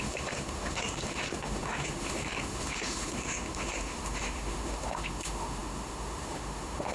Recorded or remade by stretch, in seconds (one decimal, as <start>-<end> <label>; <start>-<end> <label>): 0.0-6.9 remade